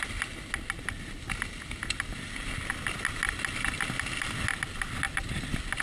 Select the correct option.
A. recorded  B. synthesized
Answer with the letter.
A